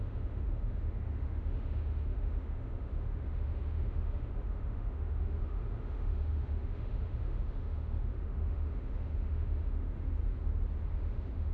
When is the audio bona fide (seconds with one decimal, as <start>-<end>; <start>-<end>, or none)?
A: 10.2-10.9